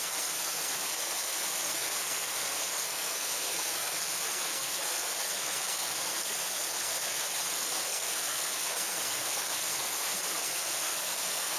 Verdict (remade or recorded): remade